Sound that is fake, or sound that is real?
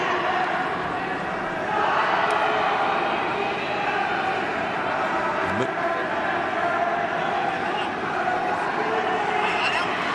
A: real